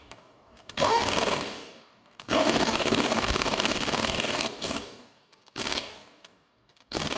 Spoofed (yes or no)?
yes